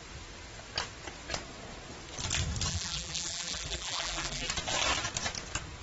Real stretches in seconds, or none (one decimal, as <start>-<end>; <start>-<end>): 0.0-2.7; 4.5-5.8